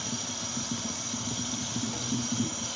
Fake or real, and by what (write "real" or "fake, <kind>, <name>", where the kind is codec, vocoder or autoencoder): real